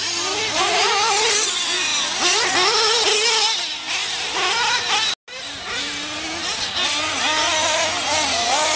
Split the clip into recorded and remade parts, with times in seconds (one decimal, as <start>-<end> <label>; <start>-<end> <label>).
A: 0.0-8.8 recorded